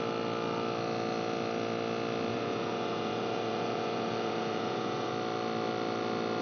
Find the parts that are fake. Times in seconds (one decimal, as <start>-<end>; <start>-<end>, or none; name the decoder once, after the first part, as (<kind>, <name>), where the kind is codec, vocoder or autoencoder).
2.3-5.1 (vocoder, Vocos)